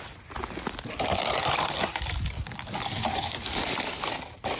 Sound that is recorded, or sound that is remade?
recorded